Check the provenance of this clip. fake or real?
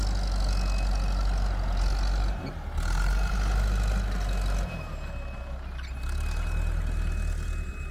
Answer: real